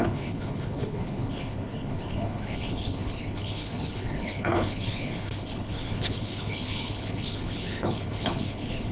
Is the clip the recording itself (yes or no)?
no